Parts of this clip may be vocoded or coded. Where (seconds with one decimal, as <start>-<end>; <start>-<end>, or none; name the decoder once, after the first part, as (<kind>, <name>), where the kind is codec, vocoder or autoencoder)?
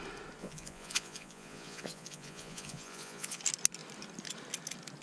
0.4-3.4 (vocoder, Vocos)